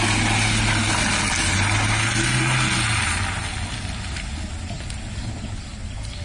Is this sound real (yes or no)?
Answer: yes